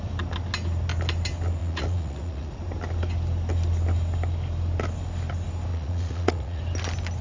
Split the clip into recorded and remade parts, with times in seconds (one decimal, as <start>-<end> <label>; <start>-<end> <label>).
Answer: 0.0-1.6 recorded; 1.6-2.6 remade; 2.6-5.7 recorded; 5.7-6.6 remade; 6.6-7.2 recorded